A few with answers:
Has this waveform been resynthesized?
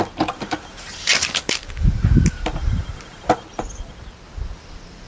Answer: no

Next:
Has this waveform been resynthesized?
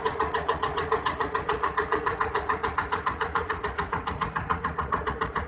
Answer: yes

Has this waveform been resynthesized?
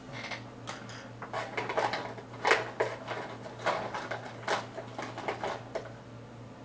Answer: no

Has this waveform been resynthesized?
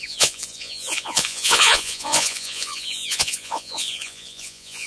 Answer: yes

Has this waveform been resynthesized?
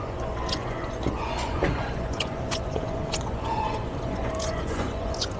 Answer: yes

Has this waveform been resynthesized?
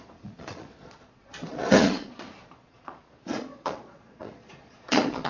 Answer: yes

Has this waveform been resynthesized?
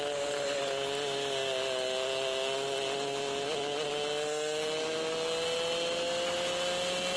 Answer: no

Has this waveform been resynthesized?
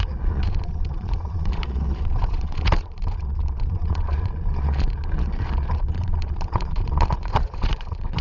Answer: yes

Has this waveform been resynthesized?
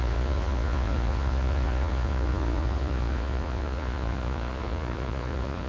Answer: yes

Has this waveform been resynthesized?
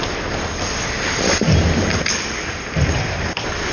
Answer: no